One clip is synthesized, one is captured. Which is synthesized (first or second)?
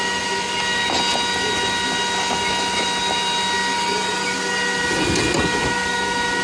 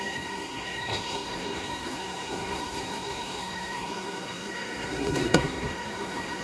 second